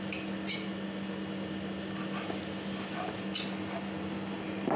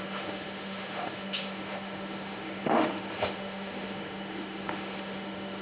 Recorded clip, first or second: first